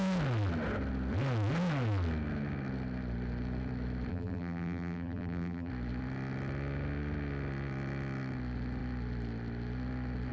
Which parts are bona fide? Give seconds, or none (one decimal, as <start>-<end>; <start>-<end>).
0.0-4.1; 5.7-10.3